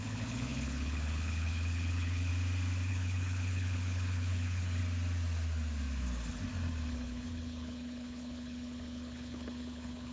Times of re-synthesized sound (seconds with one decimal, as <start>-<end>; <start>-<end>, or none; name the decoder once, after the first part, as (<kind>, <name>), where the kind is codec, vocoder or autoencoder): 0.0-2.3 (codec, HILCodec); 2.9-4.8; 6.9-10.1